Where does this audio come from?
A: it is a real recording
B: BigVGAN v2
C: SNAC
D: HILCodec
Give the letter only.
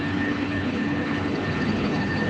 D